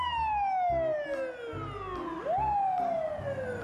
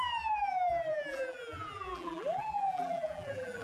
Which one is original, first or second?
first